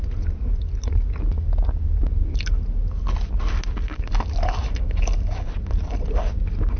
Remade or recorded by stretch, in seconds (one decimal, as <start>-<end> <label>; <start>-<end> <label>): 0.0-6.8 recorded